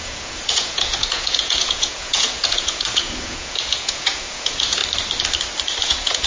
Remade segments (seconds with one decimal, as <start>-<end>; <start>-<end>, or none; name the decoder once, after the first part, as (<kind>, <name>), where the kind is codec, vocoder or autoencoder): 0.0-4.8 (vocoder, Vocos); 5.8-6.3